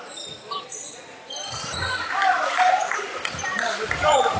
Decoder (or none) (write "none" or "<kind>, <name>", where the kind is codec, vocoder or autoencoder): vocoder, BigVGAN v2